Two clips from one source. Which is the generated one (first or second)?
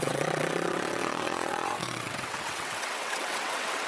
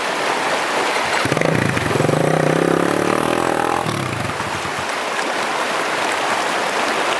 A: first